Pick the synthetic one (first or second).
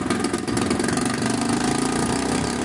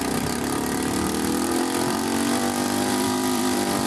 second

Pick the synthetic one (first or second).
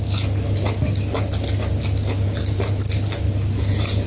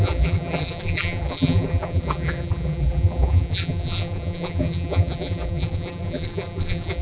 second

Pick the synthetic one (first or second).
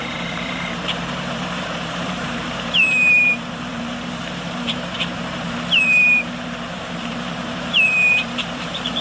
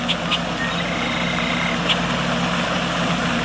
first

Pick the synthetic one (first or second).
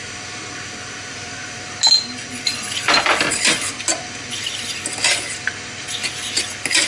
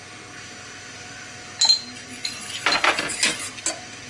first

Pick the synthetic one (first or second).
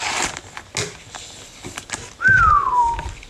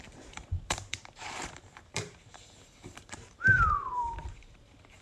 second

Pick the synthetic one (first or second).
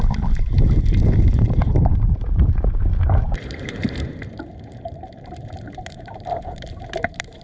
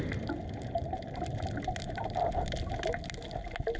first